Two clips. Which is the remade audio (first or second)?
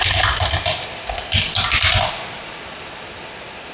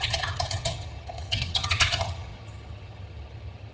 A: second